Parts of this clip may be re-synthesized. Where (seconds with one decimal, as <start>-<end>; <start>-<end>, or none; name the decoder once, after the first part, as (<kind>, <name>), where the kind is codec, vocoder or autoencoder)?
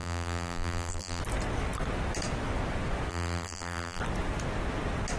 0.0-1.2 (vocoder, BigVGAN v2); 3.1-4.0